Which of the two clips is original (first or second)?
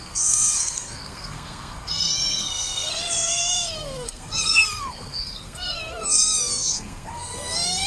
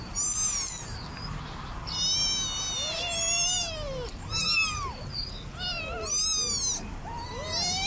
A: second